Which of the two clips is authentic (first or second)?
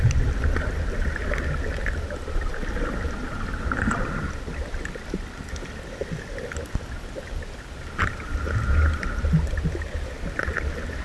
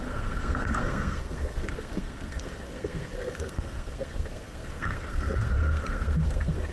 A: first